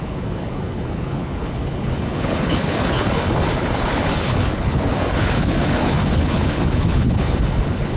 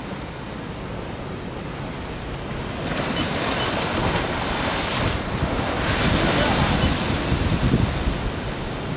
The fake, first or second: first